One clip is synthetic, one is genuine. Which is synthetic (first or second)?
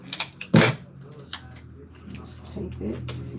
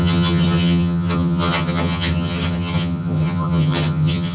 second